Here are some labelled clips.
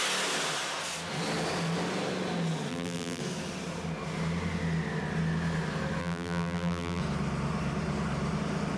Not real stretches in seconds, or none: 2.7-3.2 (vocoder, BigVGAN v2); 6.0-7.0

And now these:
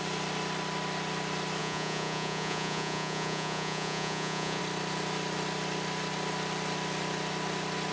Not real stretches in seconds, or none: 1.6-4.6 (vocoder, Vocos)

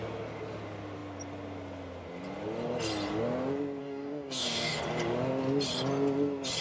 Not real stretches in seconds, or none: 3.8-4.8 (codec, DAC)

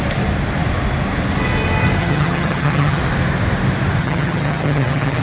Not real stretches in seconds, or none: 2.0-3.0 (vocoder, HiFi-GAN); 4.0-5.2

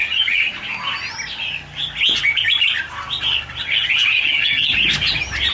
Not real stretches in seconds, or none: 0.0-0.5 (vocoder, HiFi-GAN); 3.6-4.7

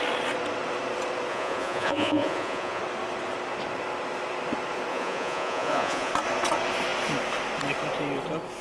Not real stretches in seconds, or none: 1.3-2.8 (vocoder, Vocos); 4.9-6.1

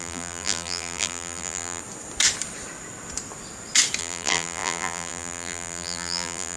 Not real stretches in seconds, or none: 0.0-1.8 (vocoder, BigVGAN v2); 4.0-6.6

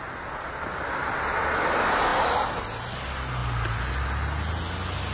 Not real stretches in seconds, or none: none